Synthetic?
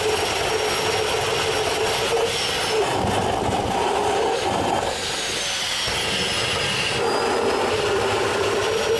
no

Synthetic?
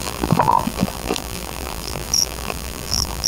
yes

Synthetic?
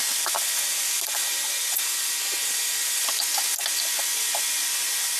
no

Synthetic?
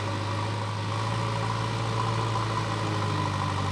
no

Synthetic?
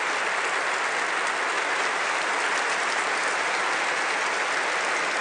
no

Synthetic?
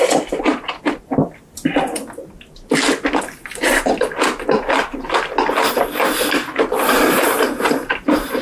no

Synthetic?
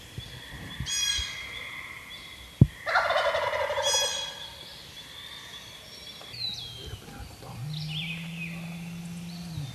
no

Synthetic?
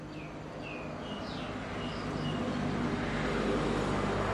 no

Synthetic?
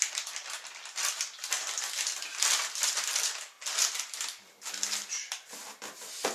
no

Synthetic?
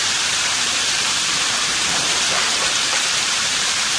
yes